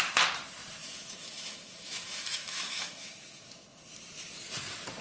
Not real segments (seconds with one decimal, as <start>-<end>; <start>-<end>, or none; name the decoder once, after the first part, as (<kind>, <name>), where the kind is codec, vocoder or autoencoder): 0.8-3.8 (autoencoder, DAC-VAE)